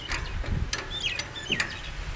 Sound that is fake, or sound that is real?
real